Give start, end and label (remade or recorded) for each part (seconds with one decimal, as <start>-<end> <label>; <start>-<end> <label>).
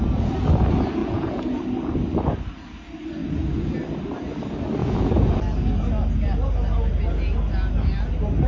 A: 0.0-1.0 recorded; 1.0-1.6 remade; 1.6-3.2 recorded; 3.2-3.8 remade; 3.8-4.8 recorded; 4.8-5.3 remade; 5.3-8.5 recorded